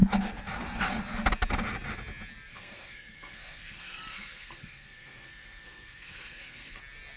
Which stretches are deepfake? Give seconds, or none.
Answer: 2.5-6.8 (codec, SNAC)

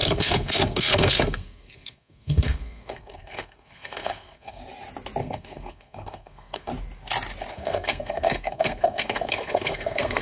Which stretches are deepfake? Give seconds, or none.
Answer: 0.0-4.6 (codec, SNAC); 5.2-6.7; 7.5-10.2